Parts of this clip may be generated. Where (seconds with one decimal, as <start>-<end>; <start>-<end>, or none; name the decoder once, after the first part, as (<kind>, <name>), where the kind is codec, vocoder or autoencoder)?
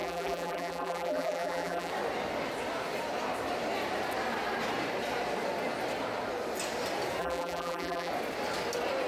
0.0-1.9 (vocoder, BigVGAN v2); 7.2-8.1